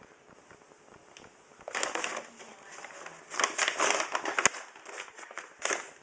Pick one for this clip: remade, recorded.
recorded